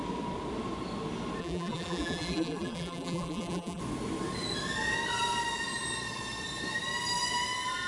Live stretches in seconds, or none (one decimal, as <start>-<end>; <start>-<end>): 0.0-1.4; 3.8-7.9